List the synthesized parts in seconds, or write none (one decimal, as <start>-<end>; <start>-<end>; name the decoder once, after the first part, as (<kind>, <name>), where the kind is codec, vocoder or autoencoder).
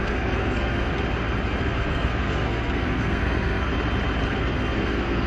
0.0-0.9 (codec, SNAC); 1.6-3.7; 4.3-5.3